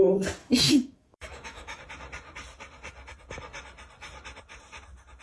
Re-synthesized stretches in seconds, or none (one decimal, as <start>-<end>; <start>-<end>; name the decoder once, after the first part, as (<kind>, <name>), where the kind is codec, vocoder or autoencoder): 0.4-1.8 (autoencoder, DAC-VAE)